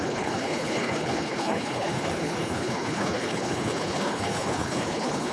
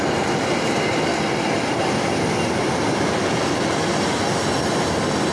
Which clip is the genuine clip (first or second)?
second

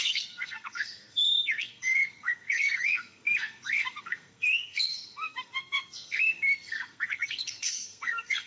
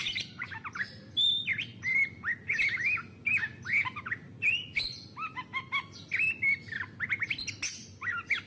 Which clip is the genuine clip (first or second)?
second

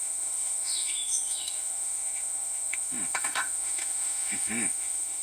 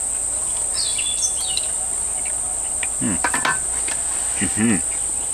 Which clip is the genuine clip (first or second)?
second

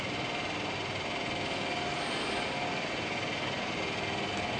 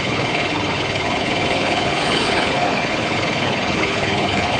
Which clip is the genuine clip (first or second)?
first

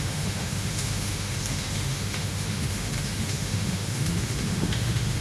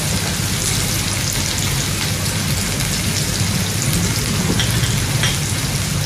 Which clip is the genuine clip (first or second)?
second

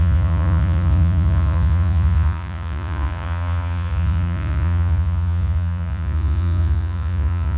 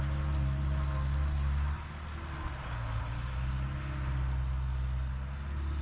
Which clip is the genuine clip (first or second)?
second